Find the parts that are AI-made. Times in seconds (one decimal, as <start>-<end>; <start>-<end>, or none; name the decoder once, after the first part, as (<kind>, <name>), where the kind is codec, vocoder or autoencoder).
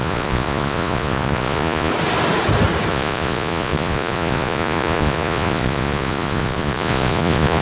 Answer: 0.0-1.9 (vocoder, Vocos); 2.9-7.6